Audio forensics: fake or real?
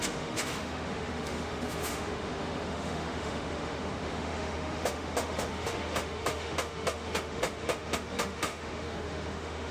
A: fake